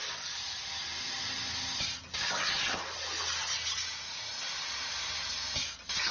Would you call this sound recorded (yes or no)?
yes